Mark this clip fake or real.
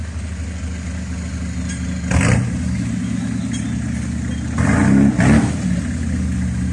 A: real